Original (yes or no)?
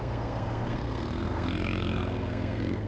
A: no